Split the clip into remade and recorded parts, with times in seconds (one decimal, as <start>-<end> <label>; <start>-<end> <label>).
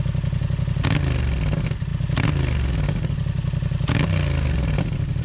0.0-5.2 recorded